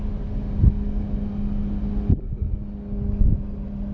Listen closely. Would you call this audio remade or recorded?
recorded